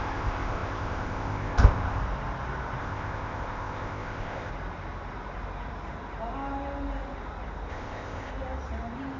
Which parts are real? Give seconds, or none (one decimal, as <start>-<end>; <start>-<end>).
2.0-2.8; 4.5-7.7; 8.3-9.2